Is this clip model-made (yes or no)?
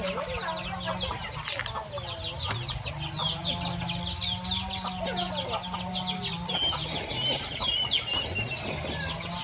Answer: no